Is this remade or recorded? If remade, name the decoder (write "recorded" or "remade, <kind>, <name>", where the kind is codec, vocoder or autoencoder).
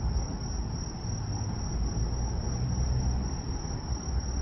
recorded